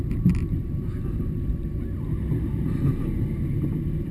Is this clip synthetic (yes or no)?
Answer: yes